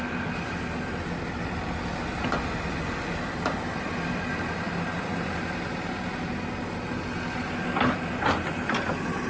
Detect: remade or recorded recorded